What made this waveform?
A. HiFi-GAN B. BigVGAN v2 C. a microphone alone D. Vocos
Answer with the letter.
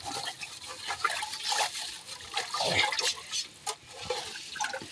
C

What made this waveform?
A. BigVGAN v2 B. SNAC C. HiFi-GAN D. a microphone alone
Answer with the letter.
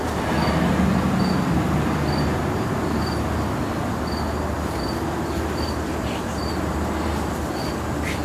D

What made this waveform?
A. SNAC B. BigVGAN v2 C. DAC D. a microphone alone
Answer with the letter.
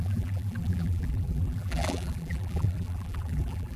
B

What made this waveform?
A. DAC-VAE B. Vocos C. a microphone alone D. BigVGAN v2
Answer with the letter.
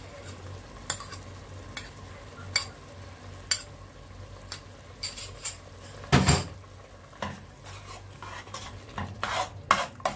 C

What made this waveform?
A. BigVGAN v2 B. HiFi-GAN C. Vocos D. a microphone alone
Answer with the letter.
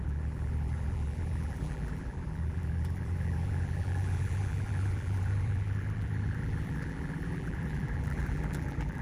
A